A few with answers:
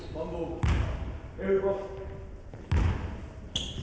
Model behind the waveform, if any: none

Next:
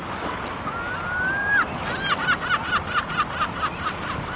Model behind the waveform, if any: none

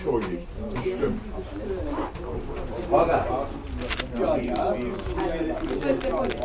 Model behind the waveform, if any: none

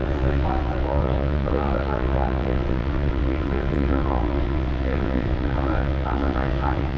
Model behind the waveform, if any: vocoder, WaveNeXt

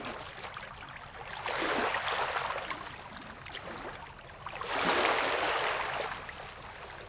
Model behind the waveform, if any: none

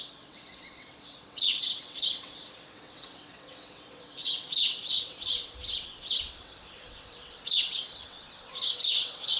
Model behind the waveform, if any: vocoder, WaveNeXt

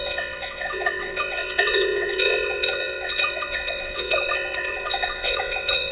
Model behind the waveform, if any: vocoder, WaveNeXt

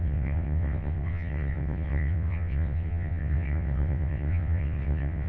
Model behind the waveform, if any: vocoder, WaveNeXt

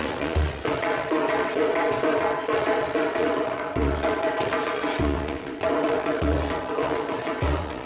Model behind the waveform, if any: vocoder, WaveNeXt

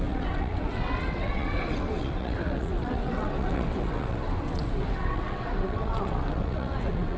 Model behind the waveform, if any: vocoder, WaveNeXt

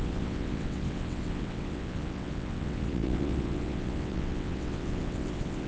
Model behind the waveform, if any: vocoder, WaveNeXt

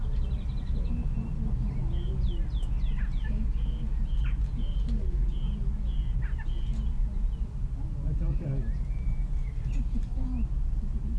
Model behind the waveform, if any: none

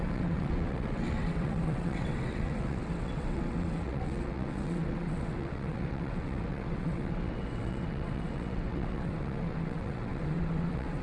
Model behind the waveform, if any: vocoder, WaveNeXt